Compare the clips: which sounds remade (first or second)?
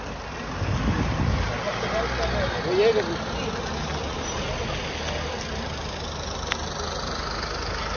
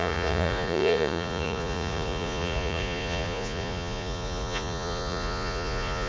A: second